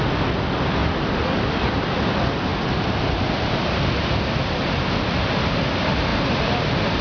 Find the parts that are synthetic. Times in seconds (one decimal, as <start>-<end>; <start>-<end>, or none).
none